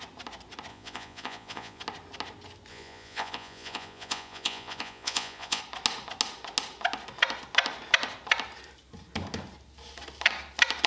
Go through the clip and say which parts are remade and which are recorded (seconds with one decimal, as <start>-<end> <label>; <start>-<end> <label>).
0.0-0.7 recorded; 0.7-1.8 remade; 1.8-2.7 recorded; 2.7-5.6 remade; 5.6-10.9 recorded